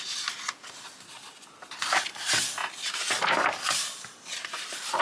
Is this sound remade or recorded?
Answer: recorded